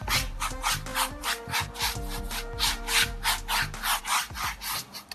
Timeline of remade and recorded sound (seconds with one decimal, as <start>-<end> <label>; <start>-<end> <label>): 0.0-5.1 recorded